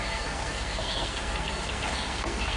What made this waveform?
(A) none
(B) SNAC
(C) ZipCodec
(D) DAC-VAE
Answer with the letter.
B